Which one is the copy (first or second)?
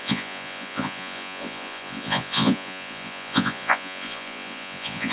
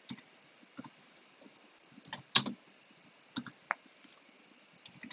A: first